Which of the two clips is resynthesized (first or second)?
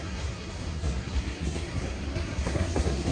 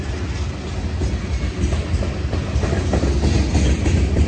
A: first